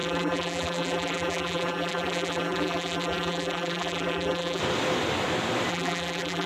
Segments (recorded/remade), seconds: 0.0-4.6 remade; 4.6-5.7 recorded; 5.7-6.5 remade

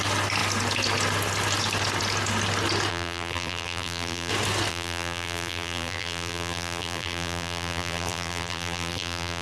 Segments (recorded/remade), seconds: 0.0-2.9 recorded; 2.9-4.3 remade; 4.3-4.7 recorded; 4.7-9.4 remade

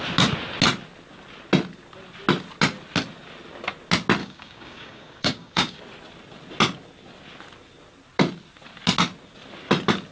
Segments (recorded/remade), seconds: 0.0-4.2 recorded; 4.2-5.8 remade; 5.8-10.1 recorded

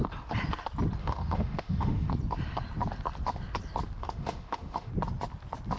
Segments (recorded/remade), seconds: 0.0-1.0 recorded; 1.0-2.1 remade; 2.1-4.0 recorded; 4.0-4.9 remade; 4.9-5.8 recorded